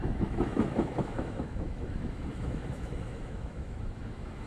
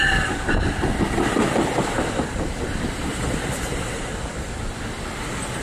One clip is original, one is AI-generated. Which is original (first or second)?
second